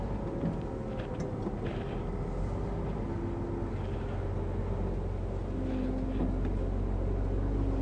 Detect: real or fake real